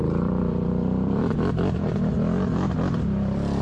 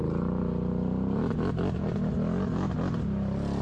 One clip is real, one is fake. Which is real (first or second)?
second